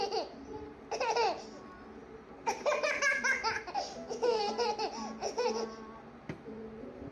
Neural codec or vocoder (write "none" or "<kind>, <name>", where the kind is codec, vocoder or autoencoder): none